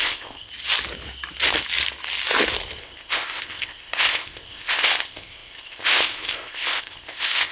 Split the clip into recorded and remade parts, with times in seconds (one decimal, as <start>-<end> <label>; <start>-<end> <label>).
0.0-0.5 remade; 0.5-2.8 recorded; 2.8-7.5 remade